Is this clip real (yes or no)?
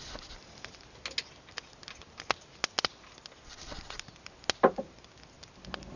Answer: yes